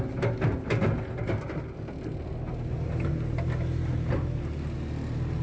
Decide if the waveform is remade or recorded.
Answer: recorded